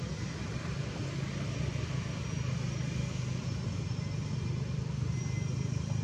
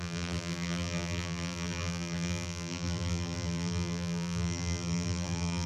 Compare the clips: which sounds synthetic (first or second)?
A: second